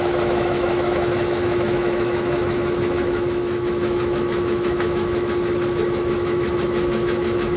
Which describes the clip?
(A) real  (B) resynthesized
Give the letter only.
B